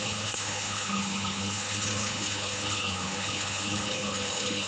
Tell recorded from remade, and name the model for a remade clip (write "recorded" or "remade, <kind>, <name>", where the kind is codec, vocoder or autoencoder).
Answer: remade, codec, HILCodec